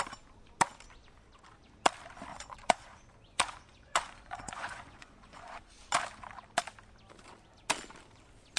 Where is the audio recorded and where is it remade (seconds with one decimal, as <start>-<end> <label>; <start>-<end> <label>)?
0.0-2.3 recorded; 2.3-5.7 remade; 5.7-8.6 recorded